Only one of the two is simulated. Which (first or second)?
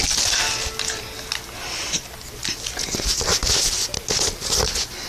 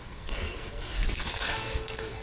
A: second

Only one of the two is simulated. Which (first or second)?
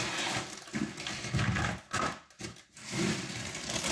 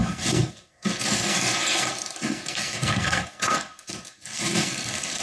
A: second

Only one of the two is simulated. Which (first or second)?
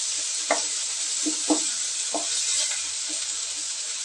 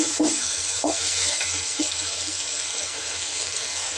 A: second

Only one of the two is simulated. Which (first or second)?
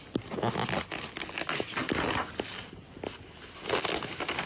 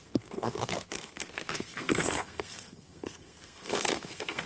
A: second